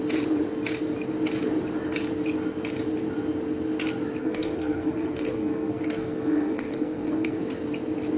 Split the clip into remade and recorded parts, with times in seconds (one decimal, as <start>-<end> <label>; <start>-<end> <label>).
0.0-4.2 recorded; 4.2-7.4 remade; 7.4-8.2 recorded